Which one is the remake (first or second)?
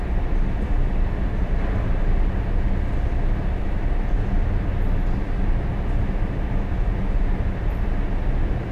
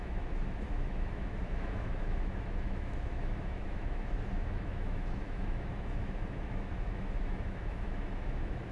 second